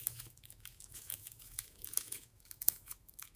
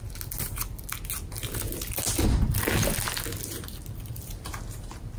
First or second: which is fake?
first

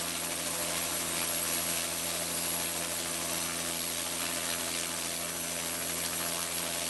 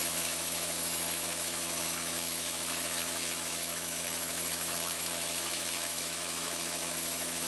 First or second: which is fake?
second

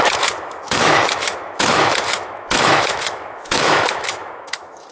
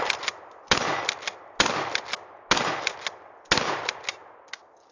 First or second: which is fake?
first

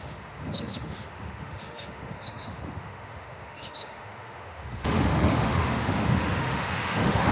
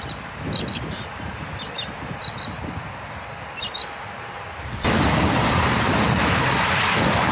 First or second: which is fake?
first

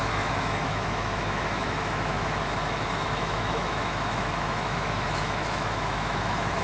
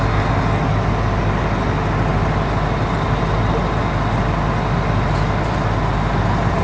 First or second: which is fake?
first